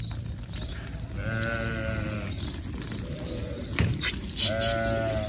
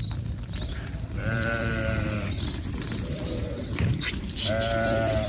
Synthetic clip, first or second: second